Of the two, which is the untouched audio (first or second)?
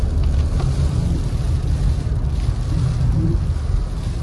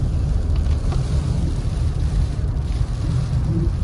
first